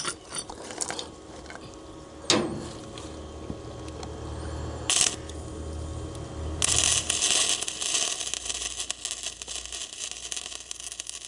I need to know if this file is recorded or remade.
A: recorded